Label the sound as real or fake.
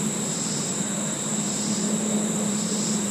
fake